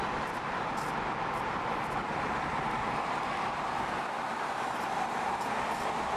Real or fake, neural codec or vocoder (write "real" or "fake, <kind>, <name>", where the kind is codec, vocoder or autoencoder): fake, vocoder, BigVGAN v2